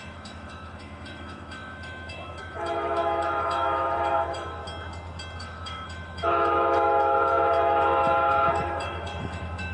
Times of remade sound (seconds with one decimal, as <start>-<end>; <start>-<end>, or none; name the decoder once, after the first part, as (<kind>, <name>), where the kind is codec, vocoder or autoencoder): 0.0-4.6 (autoencoder, DAC-VAE); 5.4-9.7

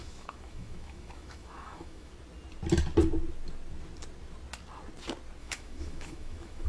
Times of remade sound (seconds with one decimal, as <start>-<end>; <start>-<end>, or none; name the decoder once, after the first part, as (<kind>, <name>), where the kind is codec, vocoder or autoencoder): 0.0-2.1 (autoencoder, DAC-VAE); 5.4-6.7

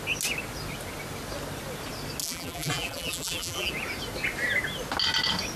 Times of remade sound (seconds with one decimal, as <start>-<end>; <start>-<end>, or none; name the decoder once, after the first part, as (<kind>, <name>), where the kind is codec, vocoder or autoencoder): 2.2-3.7 (vocoder, BigVGAN v2)

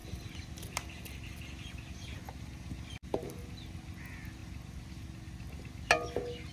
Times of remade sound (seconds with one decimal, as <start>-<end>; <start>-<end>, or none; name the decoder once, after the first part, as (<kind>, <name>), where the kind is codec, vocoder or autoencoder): none